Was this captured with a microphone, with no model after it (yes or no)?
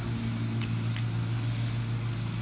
yes